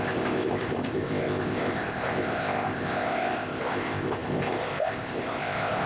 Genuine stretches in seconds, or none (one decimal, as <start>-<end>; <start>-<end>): none